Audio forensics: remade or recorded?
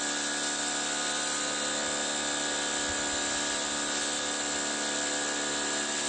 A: recorded